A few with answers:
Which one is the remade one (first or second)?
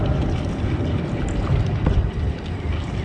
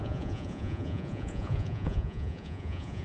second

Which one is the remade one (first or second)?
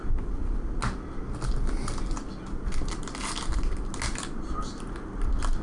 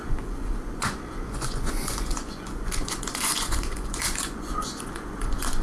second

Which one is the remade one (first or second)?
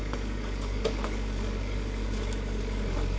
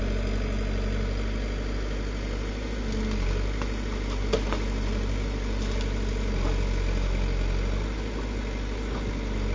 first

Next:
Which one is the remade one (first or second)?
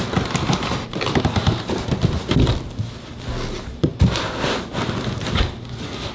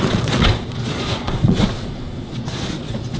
second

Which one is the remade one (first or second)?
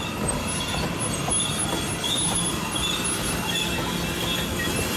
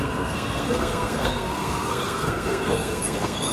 second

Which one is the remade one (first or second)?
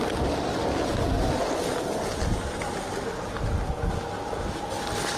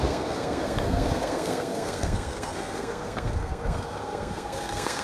second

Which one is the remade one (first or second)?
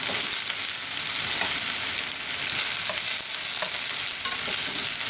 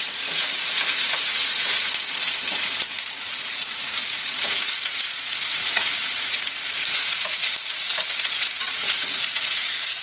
second